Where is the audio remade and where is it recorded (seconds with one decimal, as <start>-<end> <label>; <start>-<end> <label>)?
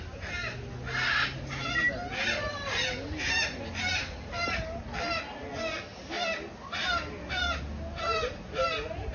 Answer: 0.0-4.0 recorded; 4.0-5.2 remade; 5.2-9.1 recorded